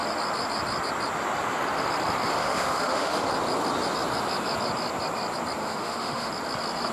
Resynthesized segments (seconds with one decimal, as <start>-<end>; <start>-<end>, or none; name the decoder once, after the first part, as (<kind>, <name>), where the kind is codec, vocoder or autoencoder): 2.3-3.1 (autoencoder, DAC-VAE); 5.6-6.3